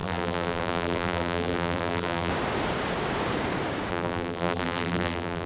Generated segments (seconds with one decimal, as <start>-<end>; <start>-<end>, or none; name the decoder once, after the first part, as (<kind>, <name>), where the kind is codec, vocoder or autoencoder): 0.0-2.3 (vocoder, BigVGAN v2); 3.9-5.5